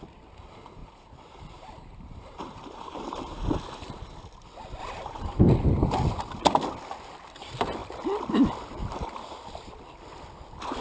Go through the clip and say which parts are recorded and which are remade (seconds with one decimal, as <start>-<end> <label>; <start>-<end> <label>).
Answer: 0.0-0.8 recorded; 0.8-4.2 remade; 4.2-4.8 recorded; 4.8-5.4 remade; 5.4-10.8 recorded